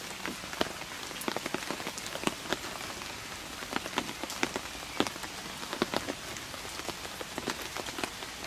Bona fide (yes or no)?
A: yes